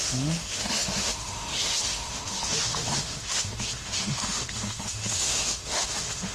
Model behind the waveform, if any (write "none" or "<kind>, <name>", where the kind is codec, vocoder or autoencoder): autoencoder, DAC-VAE